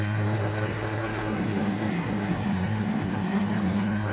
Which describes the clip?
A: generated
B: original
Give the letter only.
A